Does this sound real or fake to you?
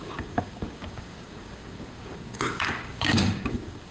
fake